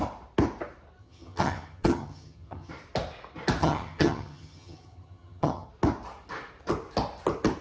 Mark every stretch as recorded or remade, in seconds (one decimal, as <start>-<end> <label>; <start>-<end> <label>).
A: 0.0-1.0 recorded; 1.0-2.7 remade; 2.7-3.6 recorded; 3.6-5.7 remade; 5.7-7.6 recorded